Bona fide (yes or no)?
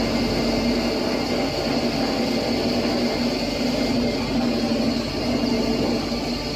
yes